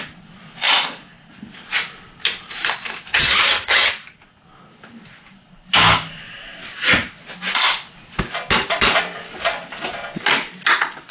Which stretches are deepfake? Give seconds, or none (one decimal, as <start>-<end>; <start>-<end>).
3.1-3.9